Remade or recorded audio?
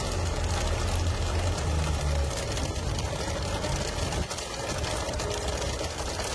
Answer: recorded